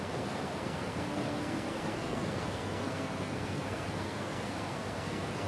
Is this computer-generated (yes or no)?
yes